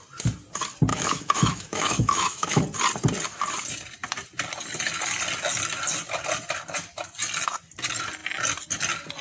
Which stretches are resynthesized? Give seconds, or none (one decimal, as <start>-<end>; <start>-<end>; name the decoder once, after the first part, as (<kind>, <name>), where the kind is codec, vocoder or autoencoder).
0.9-2.6 (autoencoder, DAC-VAE)